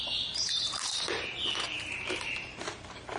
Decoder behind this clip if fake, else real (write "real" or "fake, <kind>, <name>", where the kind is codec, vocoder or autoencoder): fake, vocoder, BigVGAN v2